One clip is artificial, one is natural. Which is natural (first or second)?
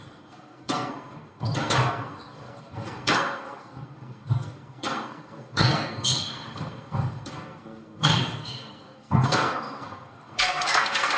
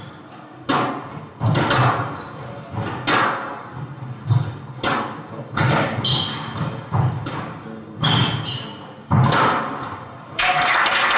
second